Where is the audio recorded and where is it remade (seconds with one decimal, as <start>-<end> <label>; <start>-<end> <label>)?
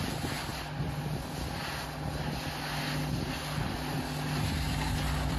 0.0-5.4 recorded